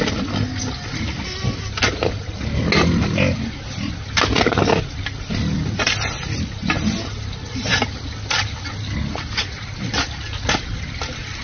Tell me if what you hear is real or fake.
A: real